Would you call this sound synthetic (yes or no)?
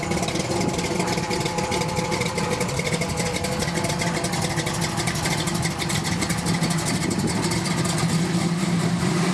no